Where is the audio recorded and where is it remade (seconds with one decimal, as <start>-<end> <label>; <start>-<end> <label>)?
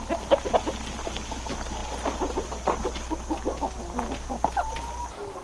0.0-5.4 recorded